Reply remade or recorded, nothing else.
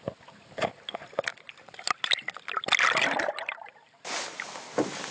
recorded